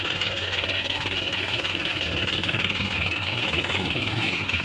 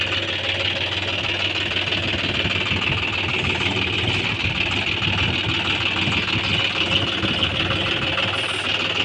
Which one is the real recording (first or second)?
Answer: second